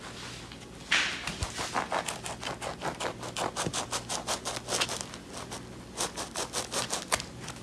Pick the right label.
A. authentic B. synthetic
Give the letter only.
A